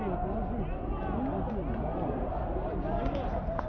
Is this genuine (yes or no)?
yes